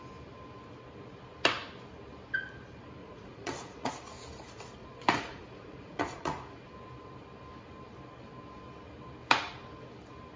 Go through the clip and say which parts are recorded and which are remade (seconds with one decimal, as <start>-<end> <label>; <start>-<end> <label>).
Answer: 0.0-3.0 recorded; 3.0-3.9 remade; 3.9-4.8 recorded; 4.8-6.5 remade; 6.5-10.4 recorded